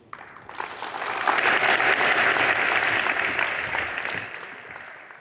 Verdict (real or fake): real